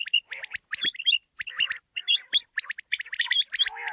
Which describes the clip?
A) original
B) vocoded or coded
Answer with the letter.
A